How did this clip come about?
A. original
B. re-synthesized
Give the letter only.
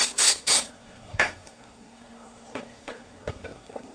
B